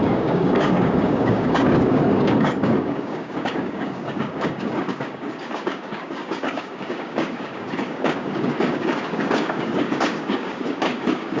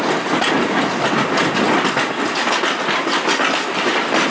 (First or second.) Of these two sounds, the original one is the second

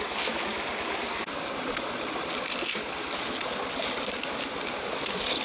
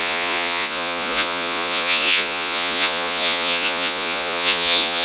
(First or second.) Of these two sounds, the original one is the first